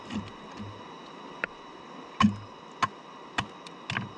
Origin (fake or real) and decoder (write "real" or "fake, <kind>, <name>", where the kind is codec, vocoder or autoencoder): real